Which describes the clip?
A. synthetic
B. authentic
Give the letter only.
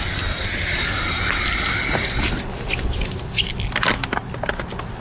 B